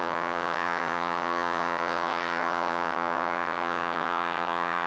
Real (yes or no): no